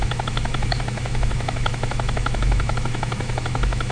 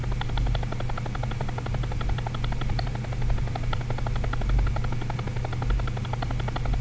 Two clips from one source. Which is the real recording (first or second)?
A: second